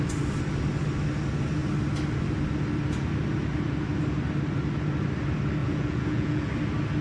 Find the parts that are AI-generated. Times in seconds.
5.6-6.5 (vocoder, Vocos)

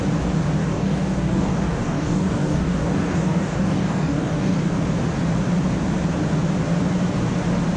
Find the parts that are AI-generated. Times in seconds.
0.6-4.7 (codec, DAC)

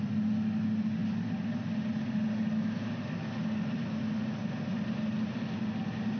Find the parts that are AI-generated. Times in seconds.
none

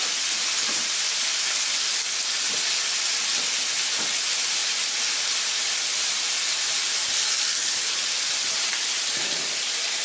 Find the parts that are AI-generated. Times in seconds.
none

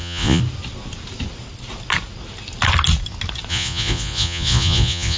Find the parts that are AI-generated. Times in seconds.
0.0-0.4 (vocoder, Vocos); 3.5-5.2

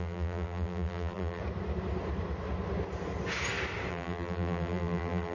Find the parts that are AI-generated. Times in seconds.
0.0-1.4 (vocoder, BigVGAN v2); 3.9-5.3

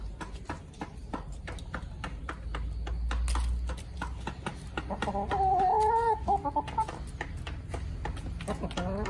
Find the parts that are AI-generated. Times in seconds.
1.0-2.2 (vocoder, BigVGAN v2)